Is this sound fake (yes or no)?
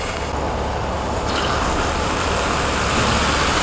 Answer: no